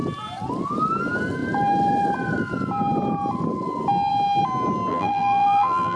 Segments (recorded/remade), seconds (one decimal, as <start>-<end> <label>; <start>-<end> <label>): 0.0-4.9 recorded; 4.9-6.0 remade